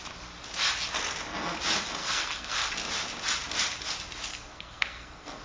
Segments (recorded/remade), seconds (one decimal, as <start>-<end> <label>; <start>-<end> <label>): 0.0-2.0 recorded; 2.0-2.7 remade; 2.7-4.3 recorded; 4.3-5.4 remade